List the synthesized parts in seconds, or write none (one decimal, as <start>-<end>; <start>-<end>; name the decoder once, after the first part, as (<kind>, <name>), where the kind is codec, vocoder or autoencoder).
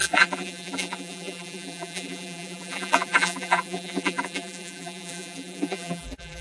0.0-6.4 (vocoder, BigVGAN v2)